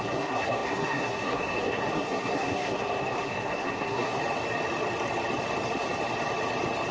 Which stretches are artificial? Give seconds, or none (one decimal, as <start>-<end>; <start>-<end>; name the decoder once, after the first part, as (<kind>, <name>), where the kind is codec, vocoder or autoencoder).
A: 0.0-4.2 (codec, SNAC)